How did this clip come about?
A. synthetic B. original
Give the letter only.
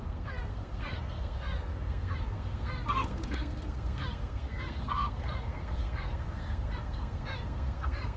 A